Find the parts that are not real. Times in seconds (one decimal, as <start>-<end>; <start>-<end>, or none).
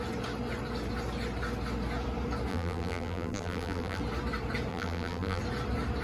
2.5-4.0; 4.7-5.4